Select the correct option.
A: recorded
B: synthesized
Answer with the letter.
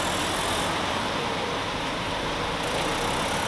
A